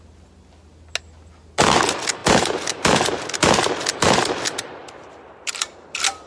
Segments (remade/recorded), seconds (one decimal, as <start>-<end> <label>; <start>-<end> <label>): 0.0-2.2 recorded; 2.2-3.2 remade; 3.2-4.8 recorded; 4.8-6.3 remade